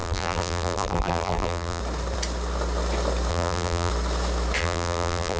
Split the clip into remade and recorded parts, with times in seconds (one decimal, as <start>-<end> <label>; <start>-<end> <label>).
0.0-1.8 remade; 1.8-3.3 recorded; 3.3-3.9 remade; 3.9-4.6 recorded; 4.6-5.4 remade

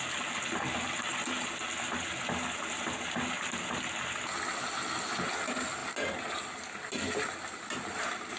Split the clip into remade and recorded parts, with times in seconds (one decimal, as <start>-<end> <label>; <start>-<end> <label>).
0.0-8.4 recorded

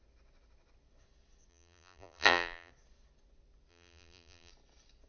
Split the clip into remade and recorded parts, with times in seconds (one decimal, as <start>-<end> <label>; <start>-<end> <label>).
0.0-1.5 recorded; 1.5-2.7 remade; 2.7-3.7 recorded; 3.7-4.5 remade; 4.5-5.1 recorded

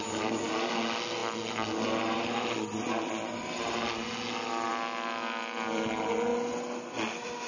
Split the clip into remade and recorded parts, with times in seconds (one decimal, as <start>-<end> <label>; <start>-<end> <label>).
0.0-7.5 recorded

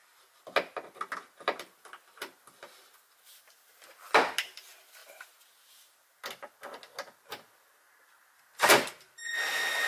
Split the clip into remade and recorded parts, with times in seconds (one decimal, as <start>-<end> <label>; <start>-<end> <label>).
0.0-9.9 recorded

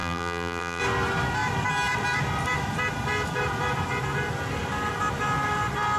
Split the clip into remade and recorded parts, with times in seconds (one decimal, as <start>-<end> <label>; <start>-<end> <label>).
0.0-0.8 remade; 0.8-6.0 recorded